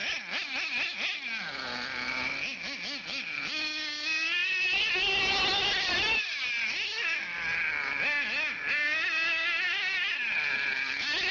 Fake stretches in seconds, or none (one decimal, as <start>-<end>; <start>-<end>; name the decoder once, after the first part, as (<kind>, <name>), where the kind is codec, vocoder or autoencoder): none